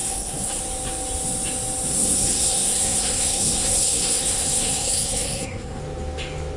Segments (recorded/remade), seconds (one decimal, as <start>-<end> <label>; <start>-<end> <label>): 0.0-0.6 remade; 0.6-1.9 recorded; 1.9-5.8 remade; 5.8-6.6 recorded